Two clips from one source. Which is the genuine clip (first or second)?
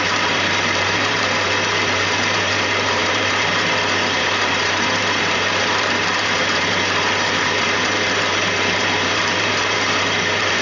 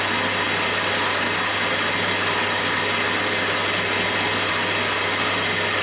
second